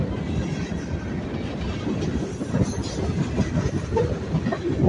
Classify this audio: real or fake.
real